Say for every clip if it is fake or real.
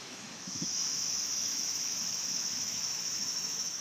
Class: fake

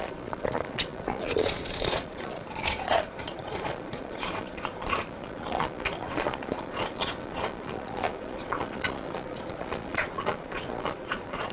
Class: fake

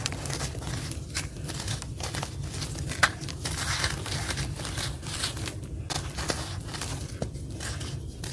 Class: real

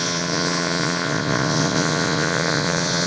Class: fake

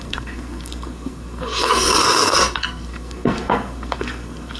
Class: fake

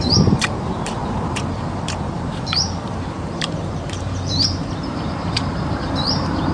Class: fake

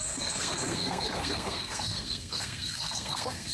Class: fake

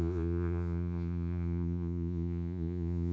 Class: fake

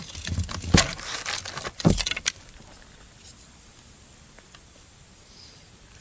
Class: real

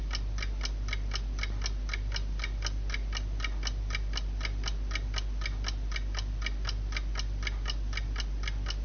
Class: real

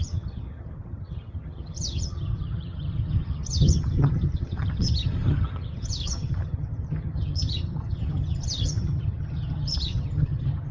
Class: fake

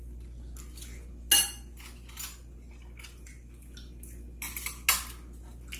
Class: real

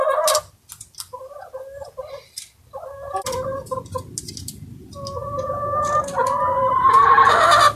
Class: real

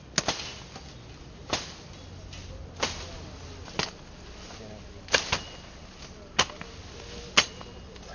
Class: real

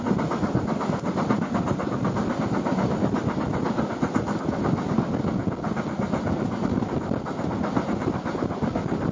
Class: real